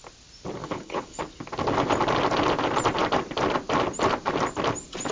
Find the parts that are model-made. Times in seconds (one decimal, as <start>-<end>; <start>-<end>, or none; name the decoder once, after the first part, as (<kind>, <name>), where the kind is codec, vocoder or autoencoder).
0.6-1.2 (codec, HILCodec)